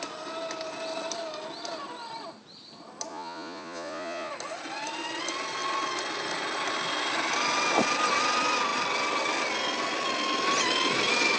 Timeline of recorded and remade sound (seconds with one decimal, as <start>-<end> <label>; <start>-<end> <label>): 0.0-3.1 recorded; 3.1-4.3 remade; 4.3-11.4 recorded